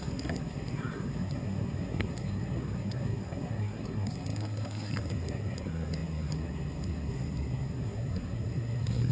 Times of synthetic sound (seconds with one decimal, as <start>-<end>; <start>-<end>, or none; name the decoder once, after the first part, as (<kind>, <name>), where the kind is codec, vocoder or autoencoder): 0.0-9.1 (codec, SNAC)